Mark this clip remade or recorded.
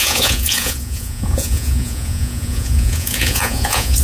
remade